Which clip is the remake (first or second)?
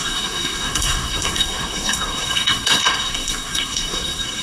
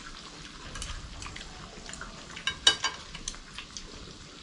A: first